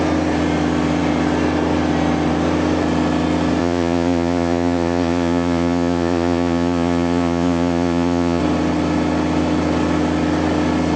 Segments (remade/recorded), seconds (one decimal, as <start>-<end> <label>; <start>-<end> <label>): 0.0-3.6 recorded; 3.6-8.4 remade; 8.4-11.0 recorded